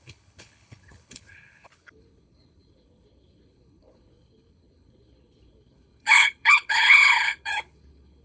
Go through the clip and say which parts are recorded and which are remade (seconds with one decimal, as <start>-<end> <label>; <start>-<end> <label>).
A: 0.0-8.2 remade